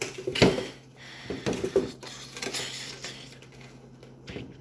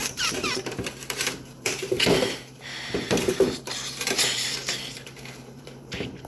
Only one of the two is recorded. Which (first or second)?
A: first